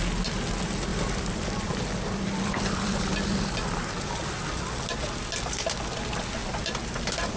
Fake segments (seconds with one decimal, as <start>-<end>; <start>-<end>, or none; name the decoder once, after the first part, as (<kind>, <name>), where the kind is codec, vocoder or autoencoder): 0.9-3.4 (vocoder, BigVGAN v2); 6.4-7.4